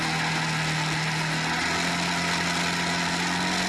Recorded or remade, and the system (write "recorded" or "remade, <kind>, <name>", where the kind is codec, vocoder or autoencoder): recorded